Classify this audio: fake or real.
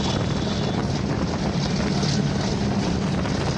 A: real